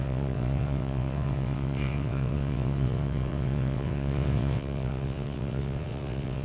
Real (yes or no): no